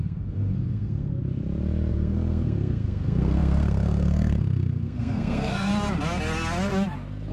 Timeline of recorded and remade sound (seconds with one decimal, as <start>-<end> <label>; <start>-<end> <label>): 0.0-1.2 remade; 1.2-1.9 recorded; 1.9-5.7 remade; 5.7-7.3 recorded